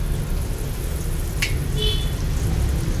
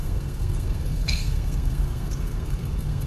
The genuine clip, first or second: first